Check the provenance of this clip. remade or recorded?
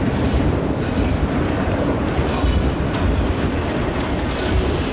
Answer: remade